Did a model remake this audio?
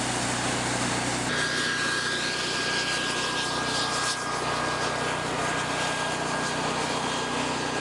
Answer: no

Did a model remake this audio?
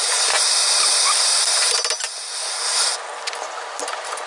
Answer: no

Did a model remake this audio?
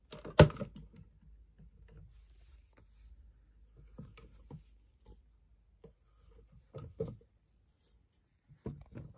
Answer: no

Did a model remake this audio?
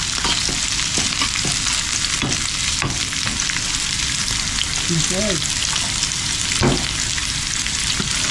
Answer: no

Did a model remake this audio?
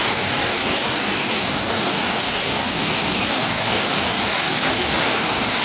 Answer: yes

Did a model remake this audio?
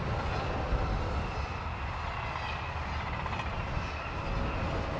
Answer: no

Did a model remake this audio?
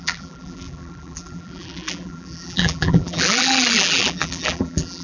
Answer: yes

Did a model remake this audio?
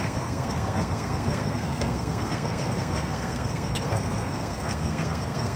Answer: yes